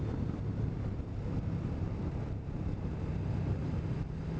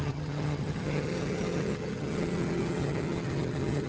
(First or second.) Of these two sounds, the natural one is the first